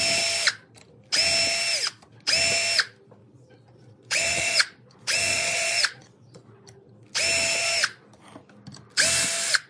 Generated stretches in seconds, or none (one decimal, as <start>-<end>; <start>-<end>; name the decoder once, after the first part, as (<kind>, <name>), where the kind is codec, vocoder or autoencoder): 3.2-6.6 (vocoder, Vocos)